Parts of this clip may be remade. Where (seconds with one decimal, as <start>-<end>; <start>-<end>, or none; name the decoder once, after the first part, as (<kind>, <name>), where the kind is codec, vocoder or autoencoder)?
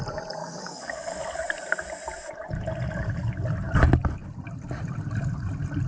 0.4-1.4 (codec, DAC)